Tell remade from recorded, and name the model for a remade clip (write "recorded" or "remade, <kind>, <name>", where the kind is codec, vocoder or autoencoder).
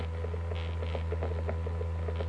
recorded